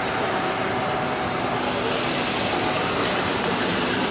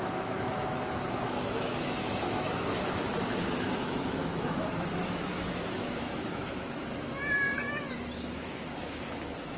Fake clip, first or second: second